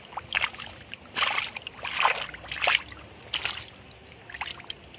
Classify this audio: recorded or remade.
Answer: recorded